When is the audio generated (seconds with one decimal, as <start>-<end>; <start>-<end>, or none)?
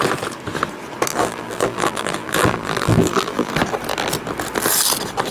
1.1-3.5